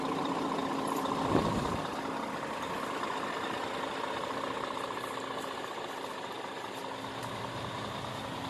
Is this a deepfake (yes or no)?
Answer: no